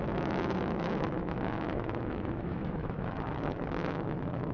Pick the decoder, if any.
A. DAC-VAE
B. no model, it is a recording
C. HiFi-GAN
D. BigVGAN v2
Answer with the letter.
A